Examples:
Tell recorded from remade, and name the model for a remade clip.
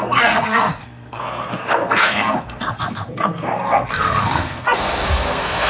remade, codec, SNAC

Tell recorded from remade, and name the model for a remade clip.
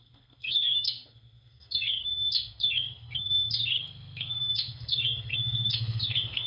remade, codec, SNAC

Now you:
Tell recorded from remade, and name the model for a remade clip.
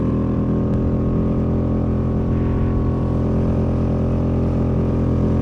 recorded